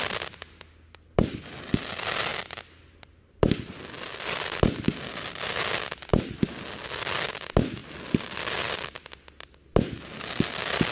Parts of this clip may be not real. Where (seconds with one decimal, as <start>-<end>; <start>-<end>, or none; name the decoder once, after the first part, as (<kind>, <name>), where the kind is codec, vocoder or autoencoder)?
7.8-9.0 (vocoder, BigVGAN v2)